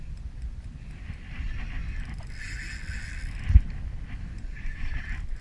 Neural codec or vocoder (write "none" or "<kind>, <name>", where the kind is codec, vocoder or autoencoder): none